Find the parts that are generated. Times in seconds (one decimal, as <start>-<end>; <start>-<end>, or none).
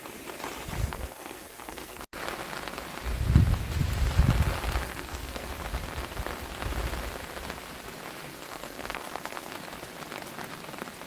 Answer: 0.8-2.2; 4.8-5.5; 8.3-9.5